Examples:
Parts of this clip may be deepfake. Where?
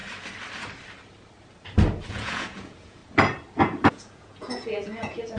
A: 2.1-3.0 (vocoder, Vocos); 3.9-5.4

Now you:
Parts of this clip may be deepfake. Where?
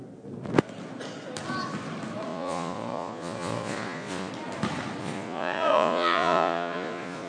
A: 2.3-4.3 (vocoder, Vocos); 5.0-7.3